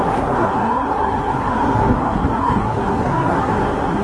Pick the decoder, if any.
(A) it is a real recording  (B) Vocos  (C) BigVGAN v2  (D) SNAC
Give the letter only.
D